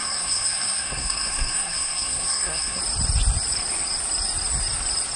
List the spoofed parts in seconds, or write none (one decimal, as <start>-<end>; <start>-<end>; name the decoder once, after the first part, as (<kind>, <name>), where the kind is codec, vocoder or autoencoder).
0.0-2.8 (codec, SNAC)